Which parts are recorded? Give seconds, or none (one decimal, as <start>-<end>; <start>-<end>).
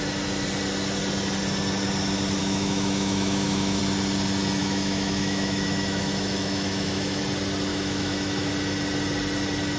0.0-2.4; 3.8-4.6; 7.2-7.7; 8.5-9.8